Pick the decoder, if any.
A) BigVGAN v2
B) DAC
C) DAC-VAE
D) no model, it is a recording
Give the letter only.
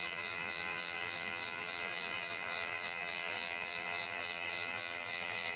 A